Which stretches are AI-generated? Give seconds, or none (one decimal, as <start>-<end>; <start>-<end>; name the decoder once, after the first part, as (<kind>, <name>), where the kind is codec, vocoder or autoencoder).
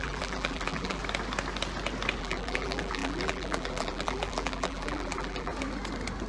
0.0-1.0 (vocoder, BigVGAN v2); 2.2-5.5